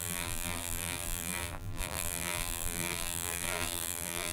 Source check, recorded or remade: remade